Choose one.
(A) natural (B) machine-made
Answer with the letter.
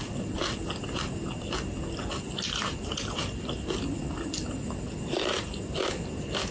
A